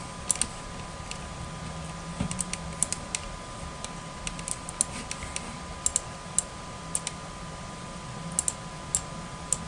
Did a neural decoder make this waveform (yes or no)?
no